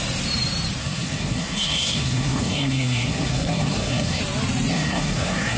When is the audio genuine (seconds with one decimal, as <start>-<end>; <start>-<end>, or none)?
0.0-0.8; 4.2-4.7